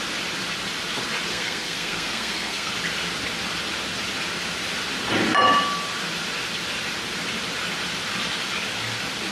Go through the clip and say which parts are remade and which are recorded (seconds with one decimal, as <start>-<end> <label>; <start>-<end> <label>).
0.0-1.3 recorded; 1.3-2.7 remade; 2.7-9.3 recorded